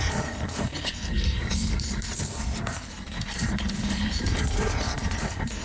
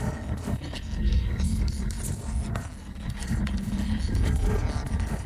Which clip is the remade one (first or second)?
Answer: first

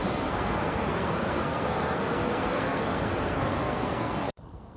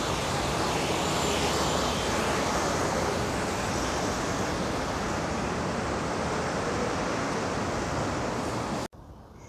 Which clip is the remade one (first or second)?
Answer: first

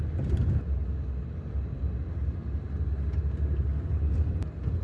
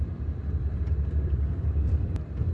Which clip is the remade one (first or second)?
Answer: second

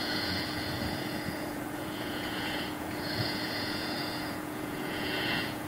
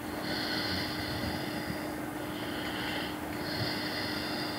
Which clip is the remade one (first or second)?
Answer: first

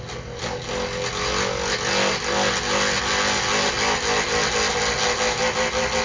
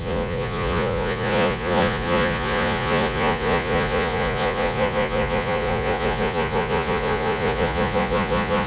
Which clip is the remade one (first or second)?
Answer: second